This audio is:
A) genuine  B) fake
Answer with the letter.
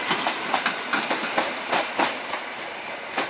A